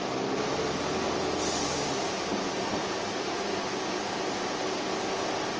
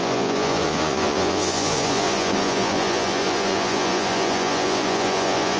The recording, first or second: first